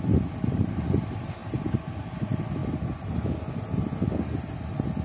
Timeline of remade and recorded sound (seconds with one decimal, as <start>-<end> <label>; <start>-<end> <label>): 0.0-5.0 recorded